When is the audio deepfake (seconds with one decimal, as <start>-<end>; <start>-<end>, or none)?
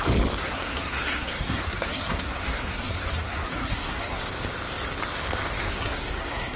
0.4-4.2; 5.6-6.6